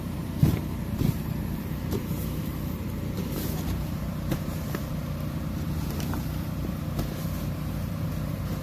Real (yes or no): no